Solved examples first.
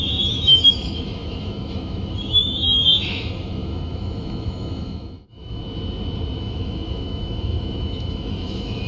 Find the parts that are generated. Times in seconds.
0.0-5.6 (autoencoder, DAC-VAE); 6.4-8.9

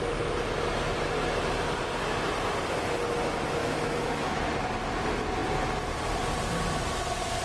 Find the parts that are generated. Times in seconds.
3.6-4.4 (autoencoder, DAC-VAE)

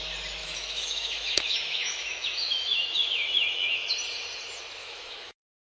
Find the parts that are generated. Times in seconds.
0.4-3.9 (autoencoder, DAC-VAE); 4.8-5.8